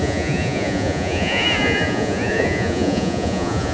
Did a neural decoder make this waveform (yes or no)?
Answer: yes